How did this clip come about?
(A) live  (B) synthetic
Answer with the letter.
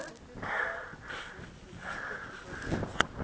A